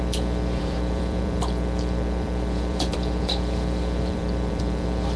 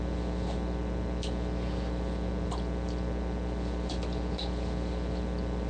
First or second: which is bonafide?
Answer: second